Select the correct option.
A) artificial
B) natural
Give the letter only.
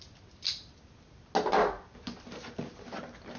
B